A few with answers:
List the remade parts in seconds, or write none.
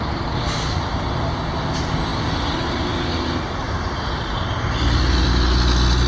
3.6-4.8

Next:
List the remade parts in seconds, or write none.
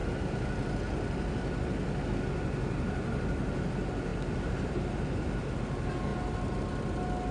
none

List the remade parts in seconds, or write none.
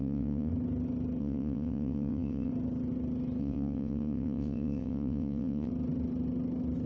0.0-0.5; 1.2-2.5; 3.4-5.7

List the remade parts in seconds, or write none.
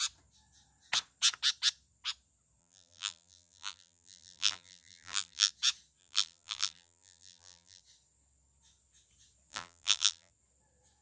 2.6-5.5; 6.0-7.8; 9.5-10.3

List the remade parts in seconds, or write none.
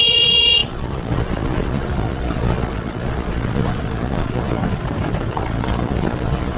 0.0-4.6; 5.3-6.6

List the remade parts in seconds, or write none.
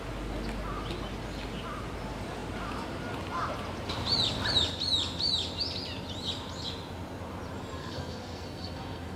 7.8-9.2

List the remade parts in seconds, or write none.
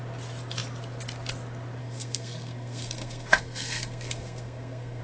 1.8-5.0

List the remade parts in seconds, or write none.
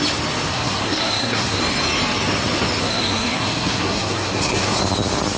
0.5-1.6; 2.8-4.8